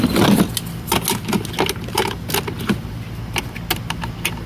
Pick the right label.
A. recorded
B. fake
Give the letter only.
A